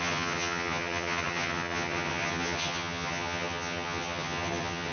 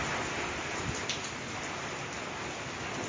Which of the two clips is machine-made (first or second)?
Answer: first